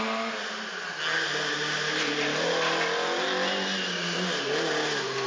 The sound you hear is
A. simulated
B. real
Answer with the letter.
B